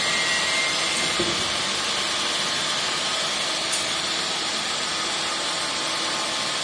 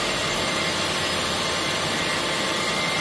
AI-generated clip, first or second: second